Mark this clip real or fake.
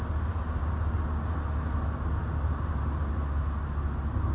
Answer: real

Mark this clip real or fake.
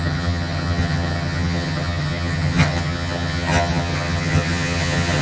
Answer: fake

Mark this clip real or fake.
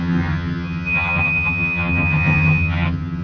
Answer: fake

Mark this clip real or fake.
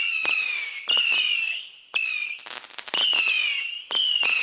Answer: real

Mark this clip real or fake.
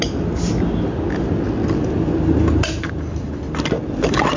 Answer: real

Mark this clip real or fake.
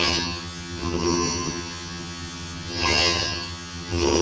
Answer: fake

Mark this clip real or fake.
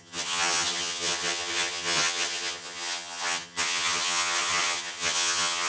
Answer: fake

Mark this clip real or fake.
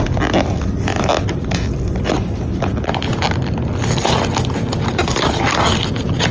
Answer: real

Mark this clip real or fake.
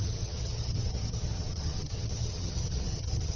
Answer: fake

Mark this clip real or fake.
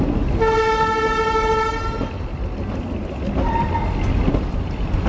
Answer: real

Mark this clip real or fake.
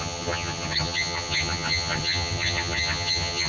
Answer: fake